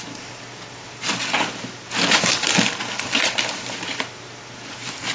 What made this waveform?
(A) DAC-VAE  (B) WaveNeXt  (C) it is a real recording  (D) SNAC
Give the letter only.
C